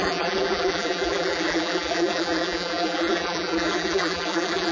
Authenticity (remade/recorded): remade